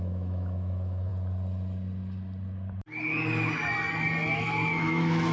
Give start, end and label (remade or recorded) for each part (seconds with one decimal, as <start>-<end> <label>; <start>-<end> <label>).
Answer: 0.0-1.1 remade; 1.1-4.3 recorded; 4.3-5.3 remade